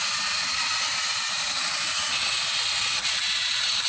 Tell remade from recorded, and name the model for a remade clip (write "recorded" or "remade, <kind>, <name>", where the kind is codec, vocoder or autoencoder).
recorded